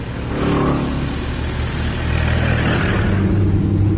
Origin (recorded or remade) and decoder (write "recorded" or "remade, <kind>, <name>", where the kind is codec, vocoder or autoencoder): recorded